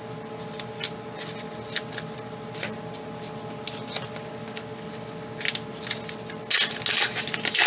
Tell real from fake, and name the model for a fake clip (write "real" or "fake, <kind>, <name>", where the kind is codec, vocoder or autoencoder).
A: real